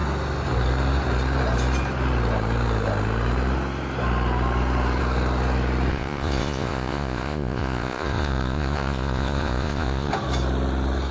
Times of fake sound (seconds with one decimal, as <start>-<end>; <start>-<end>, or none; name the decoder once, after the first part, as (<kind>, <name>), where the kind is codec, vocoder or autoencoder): 5.9-10.1 (vocoder, Vocos)